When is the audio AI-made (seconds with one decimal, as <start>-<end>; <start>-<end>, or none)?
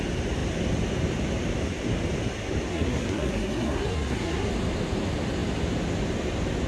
2.7-4.5